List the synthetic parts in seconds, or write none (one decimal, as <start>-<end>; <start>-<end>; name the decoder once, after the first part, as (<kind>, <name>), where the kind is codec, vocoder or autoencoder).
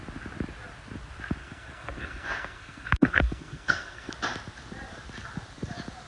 1.4-4.1 (codec, SNAC)